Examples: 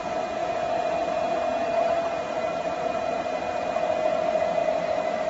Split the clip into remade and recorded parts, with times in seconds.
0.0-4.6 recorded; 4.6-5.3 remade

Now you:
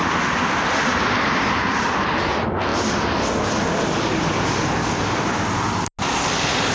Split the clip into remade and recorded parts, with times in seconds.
0.0-6.7 recorded

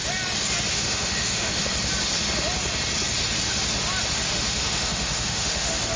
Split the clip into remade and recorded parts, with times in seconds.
0.0-0.7 recorded; 0.7-1.6 remade; 1.6-4.3 recorded; 4.3-6.0 remade

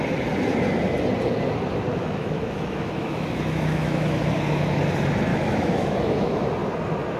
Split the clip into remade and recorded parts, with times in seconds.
0.0-1.9 recorded; 1.9-4.3 remade; 4.3-5.3 recorded; 5.3-6.5 remade; 6.5-7.2 recorded

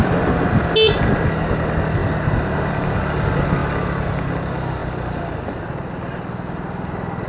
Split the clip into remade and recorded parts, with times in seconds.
0.0-7.3 recorded